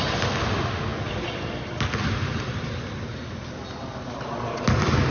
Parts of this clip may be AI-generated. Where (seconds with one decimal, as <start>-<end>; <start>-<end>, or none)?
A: none